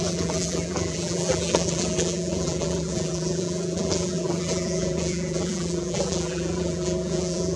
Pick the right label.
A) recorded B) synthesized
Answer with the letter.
B